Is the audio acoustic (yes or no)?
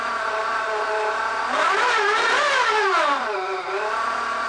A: no